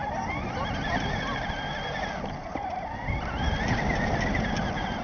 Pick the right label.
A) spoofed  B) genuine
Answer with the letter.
B